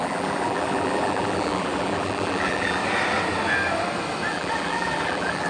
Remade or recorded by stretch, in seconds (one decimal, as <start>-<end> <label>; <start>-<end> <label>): 0.0-2.8 remade; 2.8-4.3 recorded; 4.3-5.5 remade